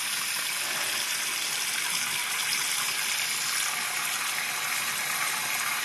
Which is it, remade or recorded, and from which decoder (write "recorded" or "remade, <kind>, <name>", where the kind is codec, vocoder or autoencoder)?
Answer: recorded